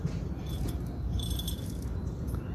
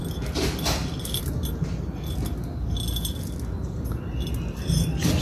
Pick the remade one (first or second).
first